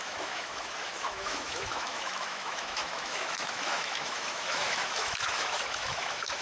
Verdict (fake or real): fake